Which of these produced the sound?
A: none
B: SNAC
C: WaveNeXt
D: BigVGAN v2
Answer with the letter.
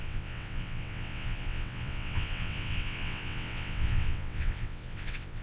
C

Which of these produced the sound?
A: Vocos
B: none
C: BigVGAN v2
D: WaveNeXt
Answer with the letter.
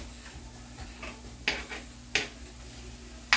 B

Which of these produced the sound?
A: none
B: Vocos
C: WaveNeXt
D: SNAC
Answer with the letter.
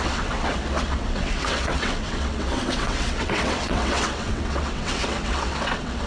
C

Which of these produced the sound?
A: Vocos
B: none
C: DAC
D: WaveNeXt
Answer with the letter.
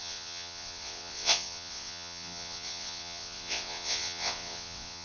D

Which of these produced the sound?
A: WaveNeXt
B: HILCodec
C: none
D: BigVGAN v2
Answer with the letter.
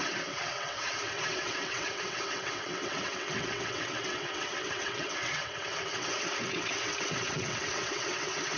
A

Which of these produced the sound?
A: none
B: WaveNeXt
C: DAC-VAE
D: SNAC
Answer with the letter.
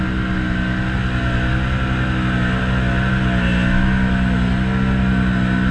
A